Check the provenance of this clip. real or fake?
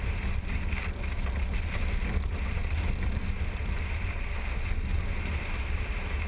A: real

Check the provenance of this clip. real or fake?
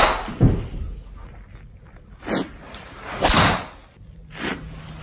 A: real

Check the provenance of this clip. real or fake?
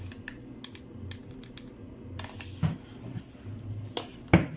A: real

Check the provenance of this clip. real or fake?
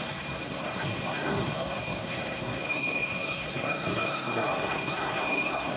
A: fake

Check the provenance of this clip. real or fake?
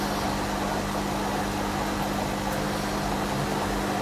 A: real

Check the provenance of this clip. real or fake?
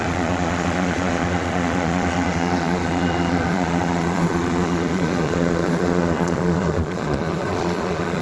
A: fake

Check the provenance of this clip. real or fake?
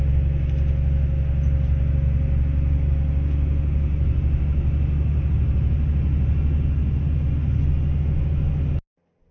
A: real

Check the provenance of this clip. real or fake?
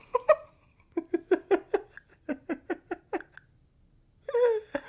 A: real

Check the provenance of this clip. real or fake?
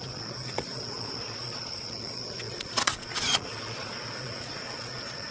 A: fake